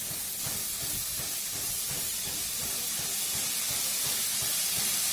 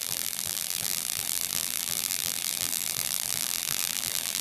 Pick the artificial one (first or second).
second